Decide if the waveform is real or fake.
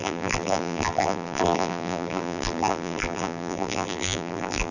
fake